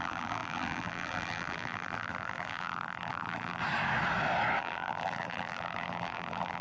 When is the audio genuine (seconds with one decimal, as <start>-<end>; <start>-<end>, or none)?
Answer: 3.6-4.6